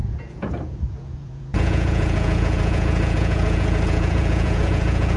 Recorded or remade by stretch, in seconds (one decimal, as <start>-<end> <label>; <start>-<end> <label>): 0.0-5.2 remade